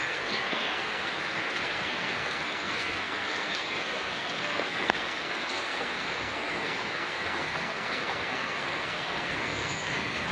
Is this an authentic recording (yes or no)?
no